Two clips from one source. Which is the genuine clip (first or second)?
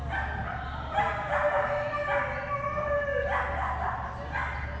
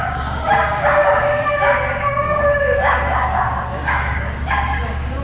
first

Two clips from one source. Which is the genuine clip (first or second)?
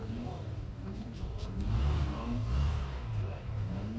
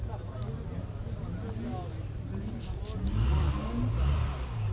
second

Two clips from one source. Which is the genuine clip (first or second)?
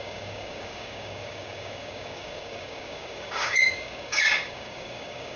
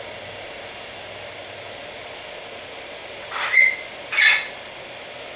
second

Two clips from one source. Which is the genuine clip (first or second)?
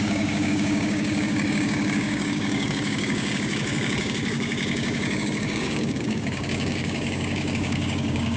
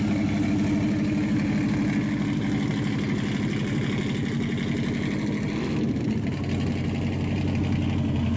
second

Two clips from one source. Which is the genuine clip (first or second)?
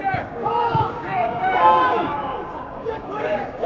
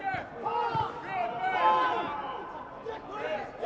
second